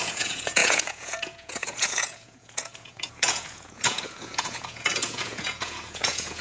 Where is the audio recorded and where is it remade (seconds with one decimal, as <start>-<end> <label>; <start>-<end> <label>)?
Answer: 0.0-6.4 remade